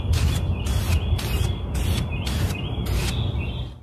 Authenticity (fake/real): real